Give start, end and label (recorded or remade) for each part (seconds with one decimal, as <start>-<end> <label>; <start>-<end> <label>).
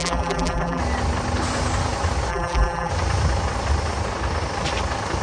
0.0-0.8 remade; 0.8-2.3 recorded; 2.3-2.9 remade; 2.9-5.2 recorded